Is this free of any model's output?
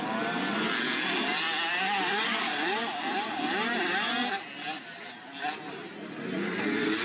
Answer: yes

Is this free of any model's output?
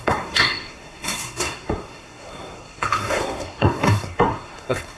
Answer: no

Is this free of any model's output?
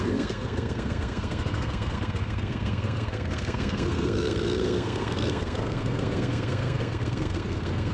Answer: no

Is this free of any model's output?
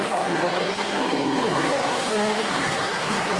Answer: no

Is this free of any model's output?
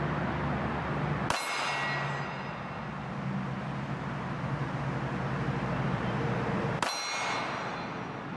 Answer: yes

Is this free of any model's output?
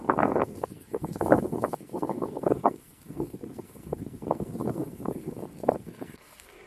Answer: no